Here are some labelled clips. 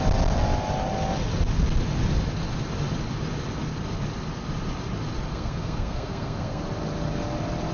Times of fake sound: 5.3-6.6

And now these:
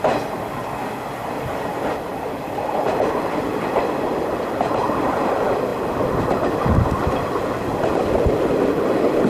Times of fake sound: none